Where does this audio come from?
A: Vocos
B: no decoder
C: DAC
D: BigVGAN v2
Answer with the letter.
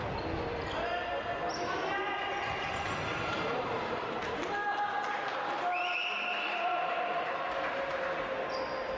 B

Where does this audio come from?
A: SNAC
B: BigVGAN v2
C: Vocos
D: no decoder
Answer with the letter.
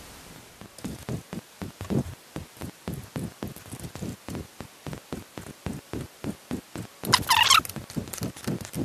D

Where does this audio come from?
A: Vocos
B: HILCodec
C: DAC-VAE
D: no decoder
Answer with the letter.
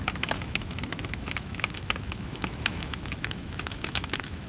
C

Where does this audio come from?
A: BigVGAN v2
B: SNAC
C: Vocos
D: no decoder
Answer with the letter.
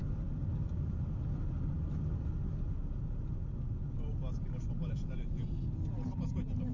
D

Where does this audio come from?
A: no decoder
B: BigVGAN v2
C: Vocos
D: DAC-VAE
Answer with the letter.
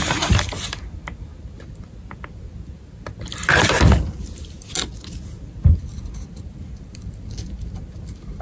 A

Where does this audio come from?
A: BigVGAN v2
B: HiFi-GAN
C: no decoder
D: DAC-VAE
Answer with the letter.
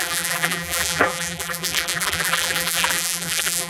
A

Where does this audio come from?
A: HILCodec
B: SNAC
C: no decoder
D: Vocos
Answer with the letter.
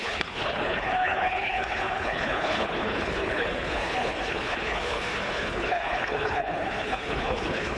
A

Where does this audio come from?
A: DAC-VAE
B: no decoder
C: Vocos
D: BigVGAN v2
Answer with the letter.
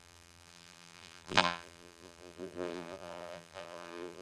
D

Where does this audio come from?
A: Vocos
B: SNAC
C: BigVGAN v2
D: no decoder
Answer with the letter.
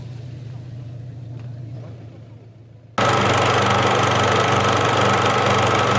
D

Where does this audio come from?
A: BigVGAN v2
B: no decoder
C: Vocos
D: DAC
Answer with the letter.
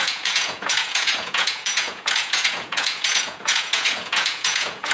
C